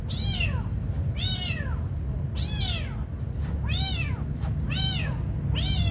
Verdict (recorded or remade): recorded